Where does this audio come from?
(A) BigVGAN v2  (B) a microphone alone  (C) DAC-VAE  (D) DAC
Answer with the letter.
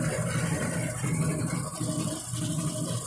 A